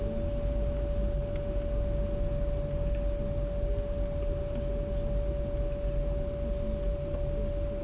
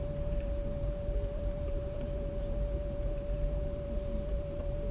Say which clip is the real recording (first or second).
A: first